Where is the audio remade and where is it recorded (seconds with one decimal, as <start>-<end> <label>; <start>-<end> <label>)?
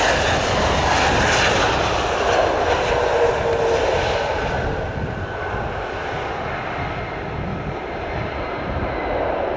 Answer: 0.0-7.5 recorded; 7.5-9.6 remade